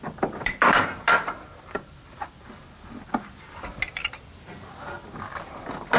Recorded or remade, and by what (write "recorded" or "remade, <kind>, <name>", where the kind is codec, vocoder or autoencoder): recorded